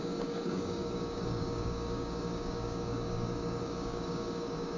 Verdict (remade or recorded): remade